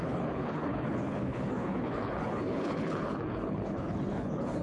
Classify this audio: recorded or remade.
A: remade